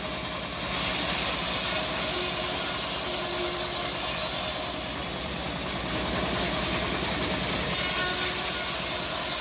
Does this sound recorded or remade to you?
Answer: recorded